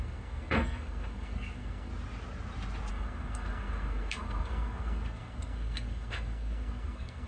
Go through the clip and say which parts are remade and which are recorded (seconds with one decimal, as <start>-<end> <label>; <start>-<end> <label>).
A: 0.0-1.9 remade; 1.9-2.9 recorded; 2.9-7.3 remade